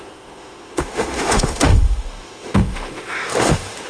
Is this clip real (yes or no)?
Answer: no